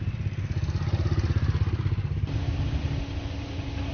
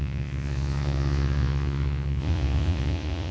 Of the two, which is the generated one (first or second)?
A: second